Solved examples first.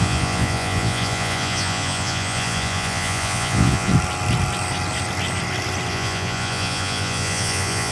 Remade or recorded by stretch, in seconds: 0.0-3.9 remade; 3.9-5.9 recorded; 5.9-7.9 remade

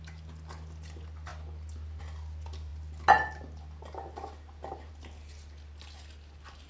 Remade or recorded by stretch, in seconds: 0.0-6.7 recorded

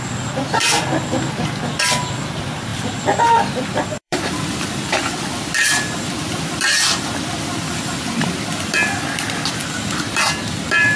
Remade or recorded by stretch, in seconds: 0.0-11.0 remade